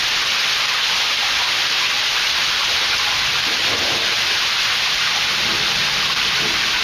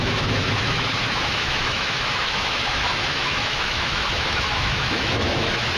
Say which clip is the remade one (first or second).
second